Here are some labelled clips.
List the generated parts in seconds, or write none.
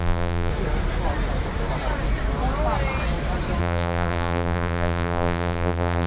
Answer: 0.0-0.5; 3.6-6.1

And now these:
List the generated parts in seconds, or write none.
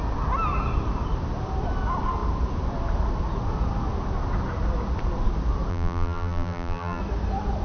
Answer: 5.7-7.0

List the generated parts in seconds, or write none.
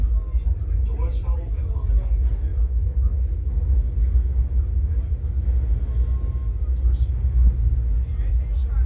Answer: 0.0-1.6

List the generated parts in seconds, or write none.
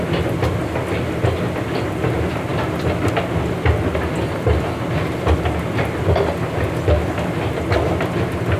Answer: none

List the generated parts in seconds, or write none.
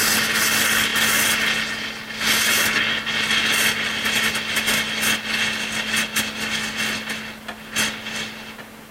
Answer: none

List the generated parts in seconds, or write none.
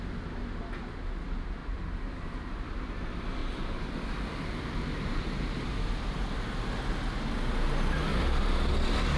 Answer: 1.6-2.5; 3.4-3.9; 4.9-6.2; 8.1-9.2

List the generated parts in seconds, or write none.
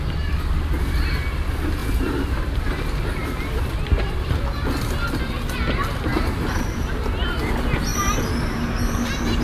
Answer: 1.8-4.2; 6.1-7.2; 7.9-9.4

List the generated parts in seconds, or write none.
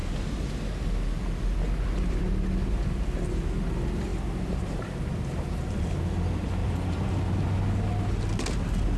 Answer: 4.1-5.8; 6.6-7.1